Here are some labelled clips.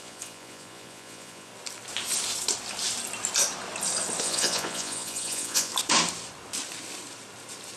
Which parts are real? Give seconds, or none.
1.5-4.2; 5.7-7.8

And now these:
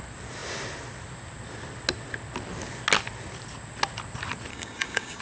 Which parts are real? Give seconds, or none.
0.0-4.5

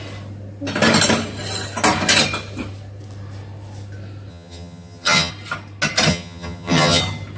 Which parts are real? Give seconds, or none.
0.0-4.3; 5.3-6.1; 7.0-7.4

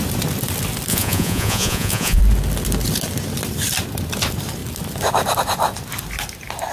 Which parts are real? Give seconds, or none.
0.0-0.9; 2.2-6.7

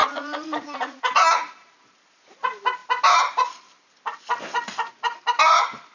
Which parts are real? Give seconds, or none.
1.5-5.9